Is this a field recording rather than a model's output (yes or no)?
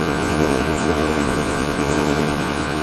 no